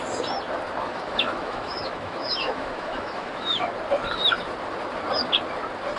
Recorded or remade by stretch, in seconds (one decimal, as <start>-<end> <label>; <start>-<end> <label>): 0.0-0.9 recorded; 0.9-3.7 remade; 3.7-6.0 recorded